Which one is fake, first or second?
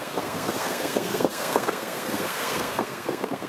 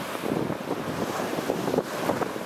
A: first